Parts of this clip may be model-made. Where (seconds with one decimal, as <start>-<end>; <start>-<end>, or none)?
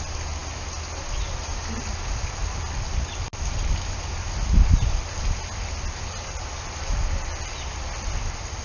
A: none